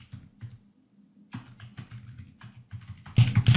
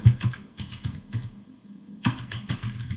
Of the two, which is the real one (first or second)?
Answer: first